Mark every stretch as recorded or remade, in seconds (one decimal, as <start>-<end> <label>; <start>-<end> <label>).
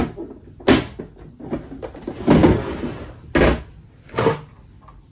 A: 0.0-5.1 recorded